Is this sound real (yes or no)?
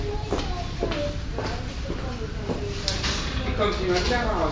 yes